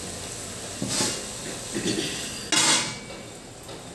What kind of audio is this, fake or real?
real